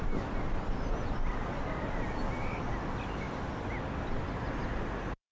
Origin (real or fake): real